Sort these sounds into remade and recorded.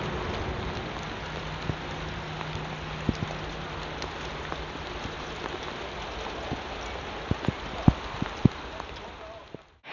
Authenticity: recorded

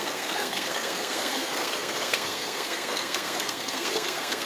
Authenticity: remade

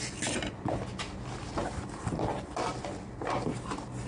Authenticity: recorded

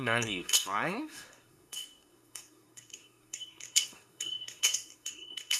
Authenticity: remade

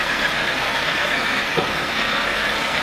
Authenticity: remade